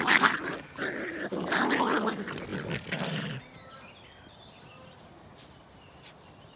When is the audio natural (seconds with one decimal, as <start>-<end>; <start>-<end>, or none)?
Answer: 0.0-6.6